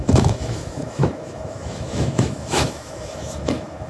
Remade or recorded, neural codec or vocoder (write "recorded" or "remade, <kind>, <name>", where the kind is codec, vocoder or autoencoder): remade, autoencoder, DAC-VAE